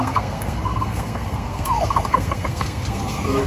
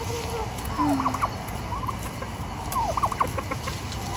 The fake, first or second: first